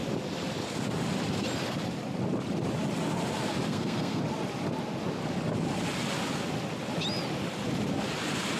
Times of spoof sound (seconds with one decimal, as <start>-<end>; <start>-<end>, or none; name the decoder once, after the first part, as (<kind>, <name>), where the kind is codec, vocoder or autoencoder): 3.7-4.2 (codec, SNAC)